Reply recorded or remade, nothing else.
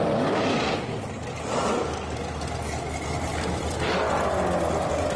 recorded